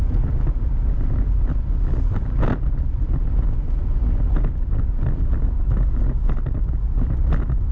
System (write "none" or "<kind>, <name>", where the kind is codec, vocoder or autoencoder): none